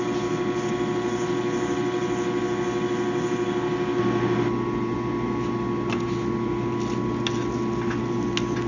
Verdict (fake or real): real